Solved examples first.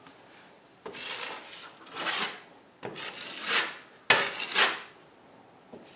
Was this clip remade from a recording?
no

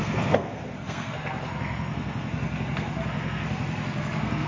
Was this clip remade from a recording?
yes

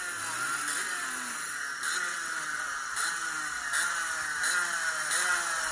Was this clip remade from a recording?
no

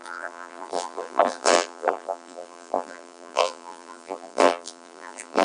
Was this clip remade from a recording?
yes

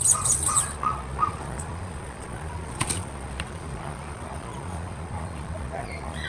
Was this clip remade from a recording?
yes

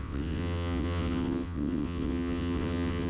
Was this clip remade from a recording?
yes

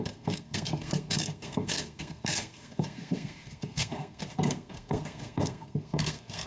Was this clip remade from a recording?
yes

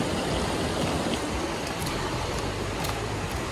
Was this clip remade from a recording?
no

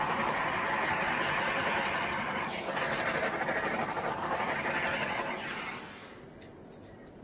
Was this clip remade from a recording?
yes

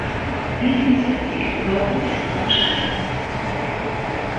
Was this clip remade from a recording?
no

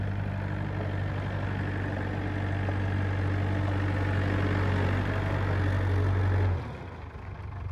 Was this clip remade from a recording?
no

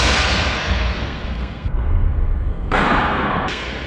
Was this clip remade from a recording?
yes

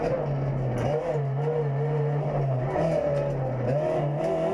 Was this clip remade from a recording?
no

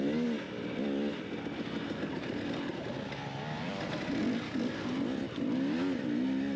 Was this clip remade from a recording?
no